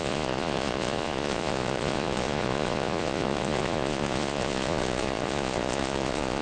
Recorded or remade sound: remade